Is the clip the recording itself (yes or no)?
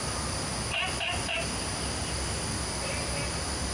yes